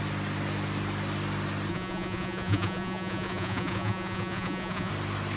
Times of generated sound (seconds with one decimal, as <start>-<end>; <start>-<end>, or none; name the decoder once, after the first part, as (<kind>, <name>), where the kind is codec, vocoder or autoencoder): 1.7-4.9 (vocoder, Vocos)